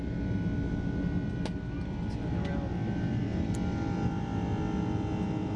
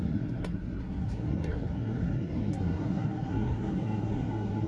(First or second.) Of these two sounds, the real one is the first